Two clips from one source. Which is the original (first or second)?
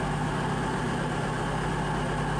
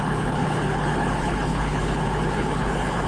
first